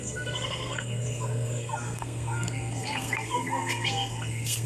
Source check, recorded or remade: remade